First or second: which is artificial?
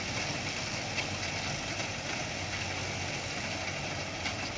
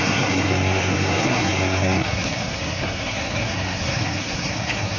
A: second